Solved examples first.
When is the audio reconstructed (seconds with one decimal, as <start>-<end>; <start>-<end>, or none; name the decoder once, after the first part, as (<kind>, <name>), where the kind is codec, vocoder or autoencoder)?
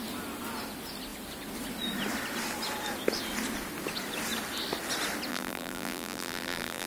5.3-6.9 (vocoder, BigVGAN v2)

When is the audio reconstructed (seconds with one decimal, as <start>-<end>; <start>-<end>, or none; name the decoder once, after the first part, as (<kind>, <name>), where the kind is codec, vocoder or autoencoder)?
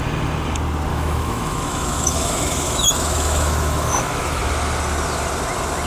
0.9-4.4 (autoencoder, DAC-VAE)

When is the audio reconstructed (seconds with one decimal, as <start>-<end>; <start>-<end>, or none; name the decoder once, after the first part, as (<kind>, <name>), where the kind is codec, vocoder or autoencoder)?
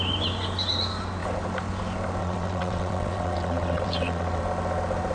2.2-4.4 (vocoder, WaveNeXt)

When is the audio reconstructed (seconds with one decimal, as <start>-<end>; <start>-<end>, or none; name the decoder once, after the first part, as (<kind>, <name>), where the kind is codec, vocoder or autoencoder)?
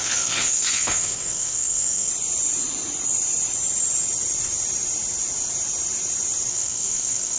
0.0-2.1 (codec, SNAC); 6.5-7.4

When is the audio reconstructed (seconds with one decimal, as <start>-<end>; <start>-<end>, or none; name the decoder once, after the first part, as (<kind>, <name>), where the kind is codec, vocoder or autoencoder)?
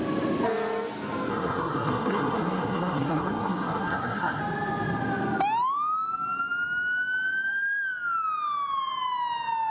1.3-4.4 (codec, SNAC)